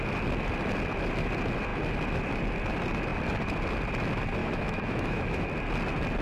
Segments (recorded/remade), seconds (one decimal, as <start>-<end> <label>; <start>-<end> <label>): 0.0-4.4 recorded; 4.4-5.5 remade; 5.5-6.2 recorded